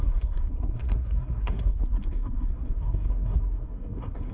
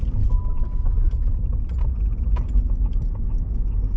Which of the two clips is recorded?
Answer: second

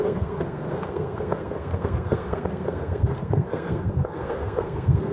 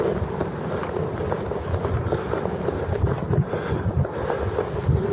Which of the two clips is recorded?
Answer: second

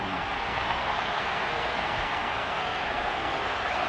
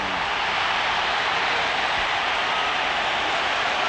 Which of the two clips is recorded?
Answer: second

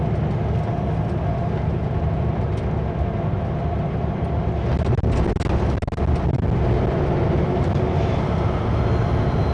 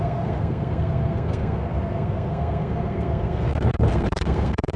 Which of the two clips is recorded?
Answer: first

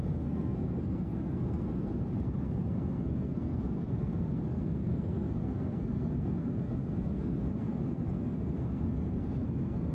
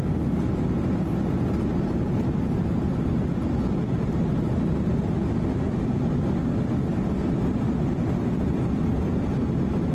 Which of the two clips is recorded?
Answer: second